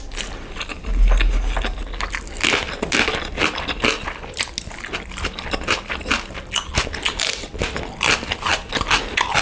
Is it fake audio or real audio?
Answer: real